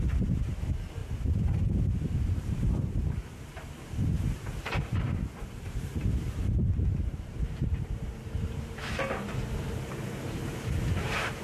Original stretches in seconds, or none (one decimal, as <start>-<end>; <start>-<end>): 1.0-1.9